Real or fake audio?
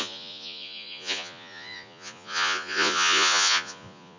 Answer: fake